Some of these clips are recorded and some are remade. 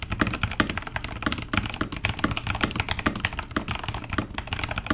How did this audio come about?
recorded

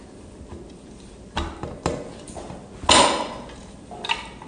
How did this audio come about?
recorded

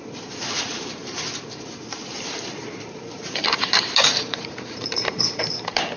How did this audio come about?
remade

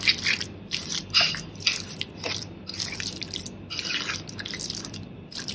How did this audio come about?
remade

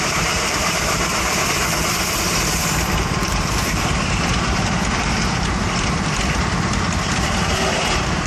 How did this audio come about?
remade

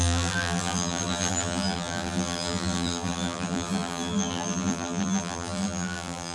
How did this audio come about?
remade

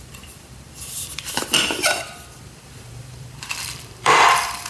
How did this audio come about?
remade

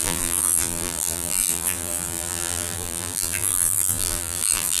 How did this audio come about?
remade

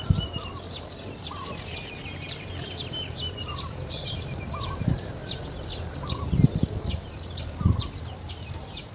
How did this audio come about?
remade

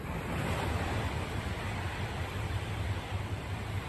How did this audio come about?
remade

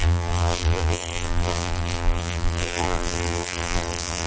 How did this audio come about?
remade